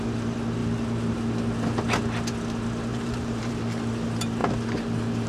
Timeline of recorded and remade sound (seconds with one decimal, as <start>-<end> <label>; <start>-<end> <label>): 0.0-2.9 recorded; 2.9-3.5 remade; 3.5-5.3 recorded